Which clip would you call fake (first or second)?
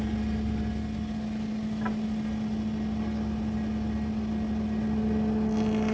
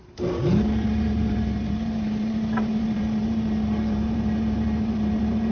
second